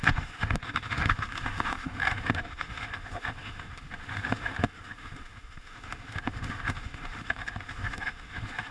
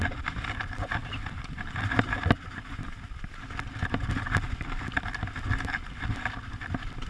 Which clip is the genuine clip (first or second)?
second